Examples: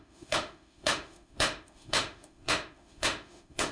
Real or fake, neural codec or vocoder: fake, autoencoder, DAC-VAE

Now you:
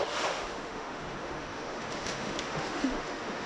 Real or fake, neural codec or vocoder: fake, autoencoder, DAC-VAE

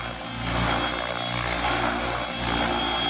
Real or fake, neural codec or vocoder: real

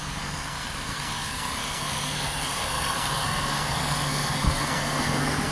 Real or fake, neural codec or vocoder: fake, codec, SNAC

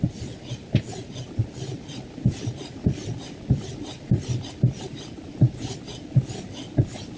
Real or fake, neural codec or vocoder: real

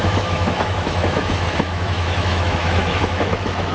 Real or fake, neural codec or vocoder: fake, autoencoder, DAC-VAE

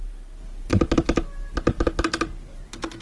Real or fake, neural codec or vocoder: real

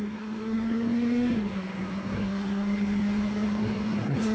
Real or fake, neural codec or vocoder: fake, codec, SNAC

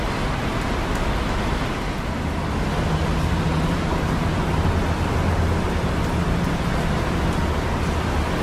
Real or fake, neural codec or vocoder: real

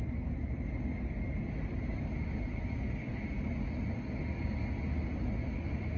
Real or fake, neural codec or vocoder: real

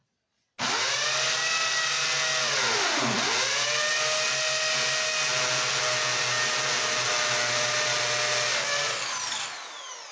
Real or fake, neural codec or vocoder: real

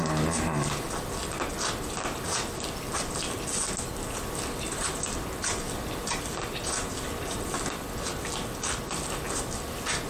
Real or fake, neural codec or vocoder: real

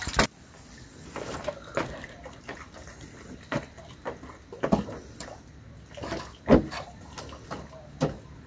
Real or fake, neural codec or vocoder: real